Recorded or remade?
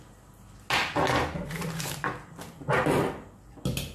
recorded